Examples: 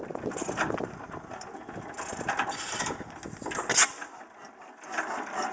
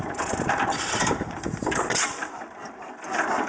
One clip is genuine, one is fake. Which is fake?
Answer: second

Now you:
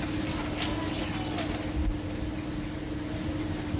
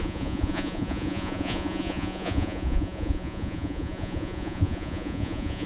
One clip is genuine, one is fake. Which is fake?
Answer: second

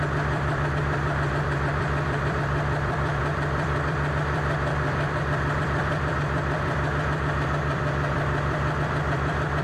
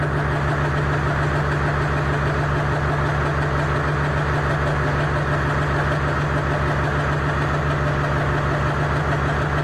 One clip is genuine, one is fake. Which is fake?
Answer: first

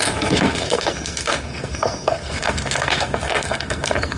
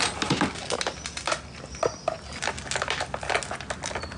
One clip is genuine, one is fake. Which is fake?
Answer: first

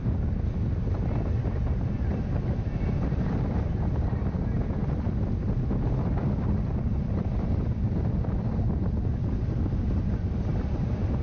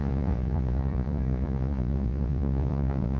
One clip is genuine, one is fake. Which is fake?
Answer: second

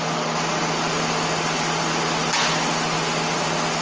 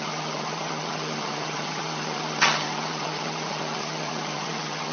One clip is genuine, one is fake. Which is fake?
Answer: second